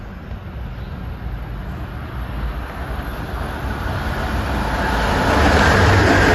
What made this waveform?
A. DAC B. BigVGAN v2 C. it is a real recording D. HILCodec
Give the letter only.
C